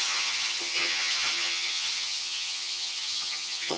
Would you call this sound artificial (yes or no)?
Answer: yes